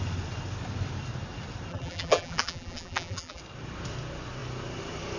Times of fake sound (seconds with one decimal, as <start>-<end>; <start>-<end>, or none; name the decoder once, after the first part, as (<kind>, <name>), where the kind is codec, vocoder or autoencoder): 1.7-3.4 (vocoder, BigVGAN v2)